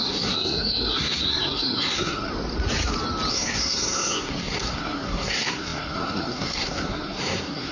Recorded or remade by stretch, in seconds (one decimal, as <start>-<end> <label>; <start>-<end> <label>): 0.0-2.3 remade; 2.3-3.3 recorded; 3.3-7.7 remade